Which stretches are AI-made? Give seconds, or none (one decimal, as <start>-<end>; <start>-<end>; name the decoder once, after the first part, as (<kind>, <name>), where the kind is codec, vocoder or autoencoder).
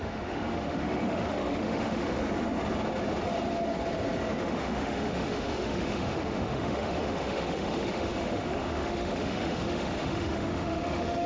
0.0-2.2 (autoencoder, DAC-VAE); 4.4-11.3